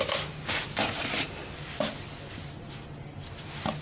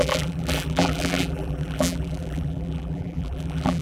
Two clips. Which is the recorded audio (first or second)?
first